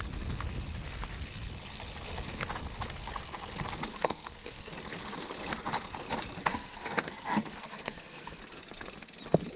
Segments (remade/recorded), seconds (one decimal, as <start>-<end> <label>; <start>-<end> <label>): 0.0-3.9 recorded; 3.9-4.7 remade; 4.7-6.5 recorded; 6.5-8.4 remade; 8.4-9.6 recorded